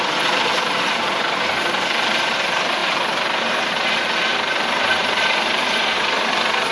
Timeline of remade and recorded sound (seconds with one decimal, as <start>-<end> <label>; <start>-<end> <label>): 0.0-6.7 recorded